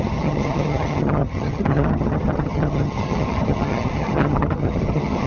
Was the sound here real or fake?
fake